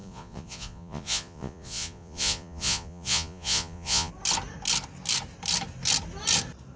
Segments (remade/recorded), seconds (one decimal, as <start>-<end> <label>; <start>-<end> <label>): 0.0-4.1 remade; 4.1-6.8 recorded